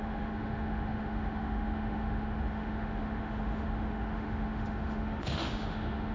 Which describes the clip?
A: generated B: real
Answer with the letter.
A